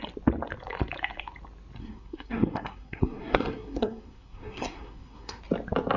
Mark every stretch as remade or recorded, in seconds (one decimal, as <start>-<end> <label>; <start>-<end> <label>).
0.0-1.8 recorded; 1.8-5.4 remade; 5.4-6.0 recorded